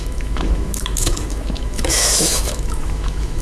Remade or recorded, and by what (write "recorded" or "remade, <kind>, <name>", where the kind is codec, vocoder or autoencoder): remade, autoencoder, DAC-VAE